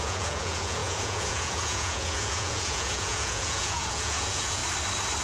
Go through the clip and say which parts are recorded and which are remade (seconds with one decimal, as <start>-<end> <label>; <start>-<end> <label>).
0.0-4.6 remade; 4.6-5.2 recorded